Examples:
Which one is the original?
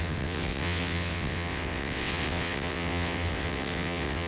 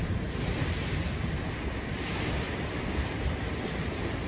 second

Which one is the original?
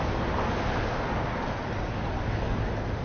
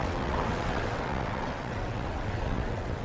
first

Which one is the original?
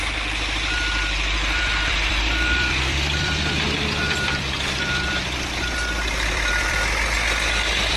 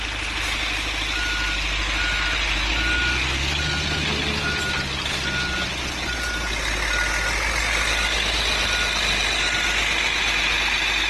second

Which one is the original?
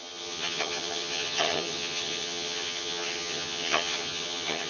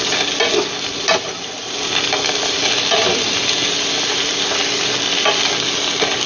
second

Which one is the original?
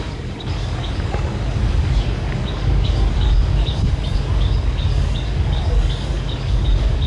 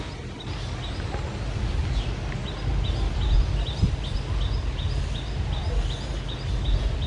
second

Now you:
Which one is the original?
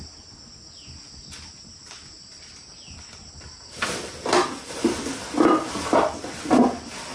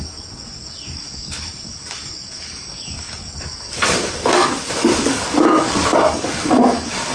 first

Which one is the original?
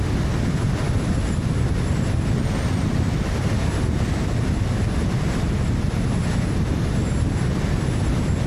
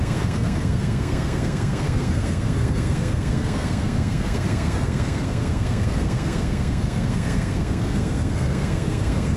first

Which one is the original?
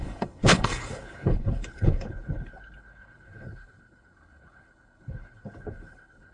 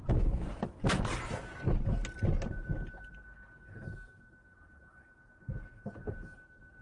second